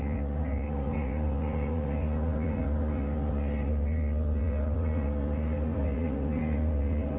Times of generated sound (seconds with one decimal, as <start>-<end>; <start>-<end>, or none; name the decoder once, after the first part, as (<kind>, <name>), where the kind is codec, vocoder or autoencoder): 0.0-7.2 (vocoder, Vocos)